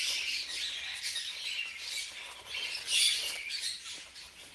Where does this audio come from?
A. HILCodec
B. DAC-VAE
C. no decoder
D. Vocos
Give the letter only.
C